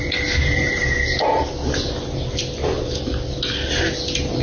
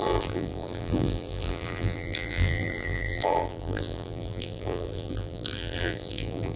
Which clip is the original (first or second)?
first